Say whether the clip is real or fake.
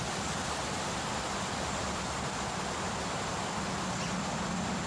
real